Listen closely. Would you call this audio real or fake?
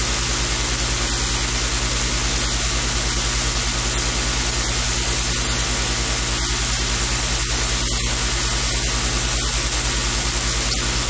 real